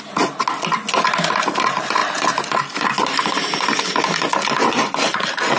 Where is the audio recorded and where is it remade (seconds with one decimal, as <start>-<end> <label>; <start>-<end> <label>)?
0.0-5.6 recorded